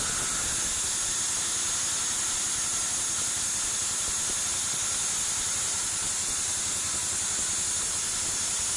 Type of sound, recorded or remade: recorded